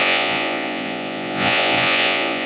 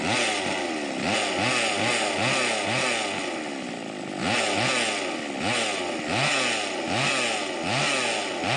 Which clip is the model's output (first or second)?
first